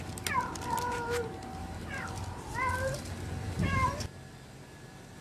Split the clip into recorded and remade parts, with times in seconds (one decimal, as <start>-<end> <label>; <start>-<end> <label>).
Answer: 0.0-1.6 recorded; 1.6-2.2 remade; 2.2-5.2 recorded